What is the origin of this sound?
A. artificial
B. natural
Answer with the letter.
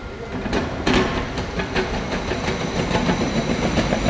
A